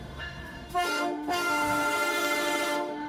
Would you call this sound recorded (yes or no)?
no